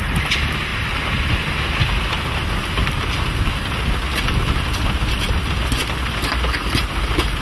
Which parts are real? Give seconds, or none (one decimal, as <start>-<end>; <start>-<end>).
0.0-7.4